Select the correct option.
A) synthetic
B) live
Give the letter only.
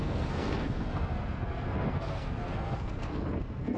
A